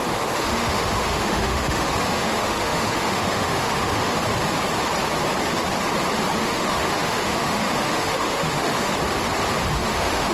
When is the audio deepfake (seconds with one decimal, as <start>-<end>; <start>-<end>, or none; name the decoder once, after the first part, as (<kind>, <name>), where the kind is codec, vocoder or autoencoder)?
0.0-4.2 (autoencoder, DAC-VAE); 6.4-8.9; 9.7-10.3